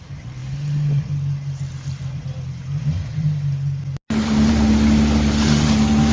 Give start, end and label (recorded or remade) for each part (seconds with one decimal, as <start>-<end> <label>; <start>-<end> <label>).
0.0-6.1 recorded